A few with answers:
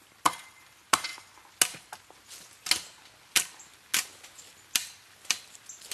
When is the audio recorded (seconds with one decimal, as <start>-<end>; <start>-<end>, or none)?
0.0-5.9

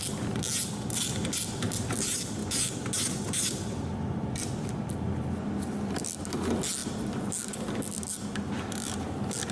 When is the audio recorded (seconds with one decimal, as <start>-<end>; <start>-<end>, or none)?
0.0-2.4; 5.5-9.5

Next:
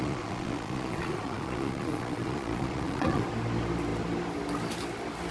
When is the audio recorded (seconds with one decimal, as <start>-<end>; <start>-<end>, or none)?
3.2-5.3

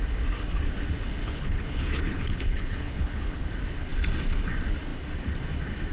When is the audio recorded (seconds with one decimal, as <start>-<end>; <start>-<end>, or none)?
0.0-1.2; 3.4-5.9